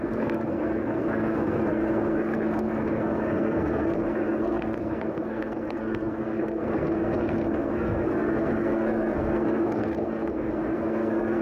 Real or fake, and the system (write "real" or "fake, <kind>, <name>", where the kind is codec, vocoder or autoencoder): fake, codec, SNAC